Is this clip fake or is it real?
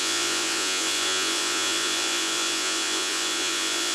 fake